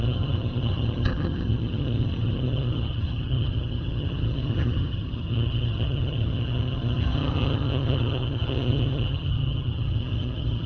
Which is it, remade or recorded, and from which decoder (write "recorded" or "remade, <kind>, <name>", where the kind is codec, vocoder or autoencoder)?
remade, vocoder, HiFi-GAN